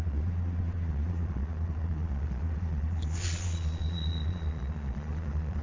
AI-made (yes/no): yes